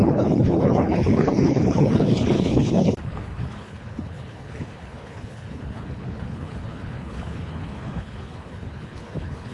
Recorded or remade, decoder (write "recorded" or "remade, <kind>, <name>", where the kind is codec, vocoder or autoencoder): remade, codec, HILCodec